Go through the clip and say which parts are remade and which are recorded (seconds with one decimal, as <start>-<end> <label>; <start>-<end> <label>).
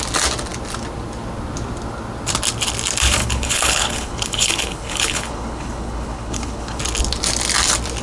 0.0-3.2 recorded; 3.2-6.8 remade; 6.8-8.0 recorded